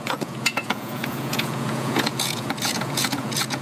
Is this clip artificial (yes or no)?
yes